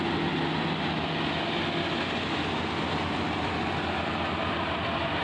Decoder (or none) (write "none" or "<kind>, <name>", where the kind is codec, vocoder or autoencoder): none